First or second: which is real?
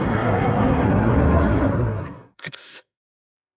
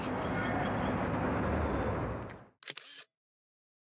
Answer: second